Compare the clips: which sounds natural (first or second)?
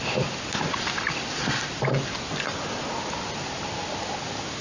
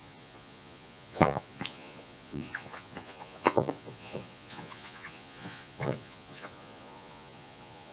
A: first